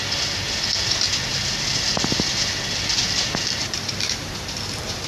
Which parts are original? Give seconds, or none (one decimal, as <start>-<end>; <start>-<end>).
0.0-5.1